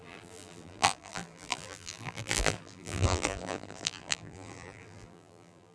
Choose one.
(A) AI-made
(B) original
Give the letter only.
A